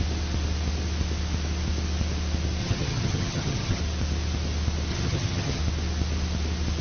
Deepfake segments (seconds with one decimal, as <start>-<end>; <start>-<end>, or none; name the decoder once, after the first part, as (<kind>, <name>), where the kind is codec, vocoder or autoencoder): 2.6-3.8 (vocoder, HiFi-GAN); 4.9-5.6